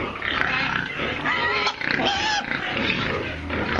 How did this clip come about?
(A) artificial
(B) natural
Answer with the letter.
B